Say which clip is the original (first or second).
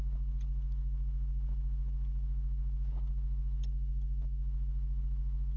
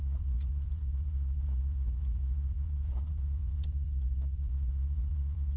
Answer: first